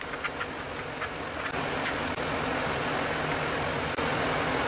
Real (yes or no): yes